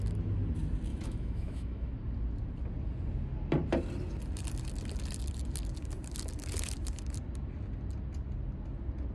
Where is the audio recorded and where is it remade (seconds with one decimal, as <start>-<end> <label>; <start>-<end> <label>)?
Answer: 0.0-0.9 recorded; 0.9-1.9 remade; 1.9-9.1 recorded